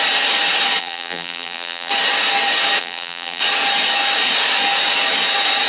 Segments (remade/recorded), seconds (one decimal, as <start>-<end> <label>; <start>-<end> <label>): 0.0-0.8 recorded; 0.8-1.9 remade; 1.9-2.8 recorded; 2.8-3.4 remade; 3.4-5.7 recorded